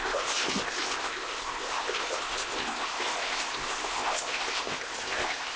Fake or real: fake